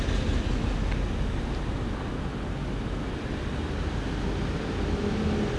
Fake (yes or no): no